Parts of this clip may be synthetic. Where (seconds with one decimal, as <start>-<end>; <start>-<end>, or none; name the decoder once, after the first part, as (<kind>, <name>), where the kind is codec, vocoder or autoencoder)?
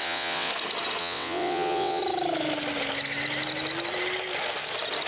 0.0-0.5 (vocoder, WaveNeXt); 1.0-2.0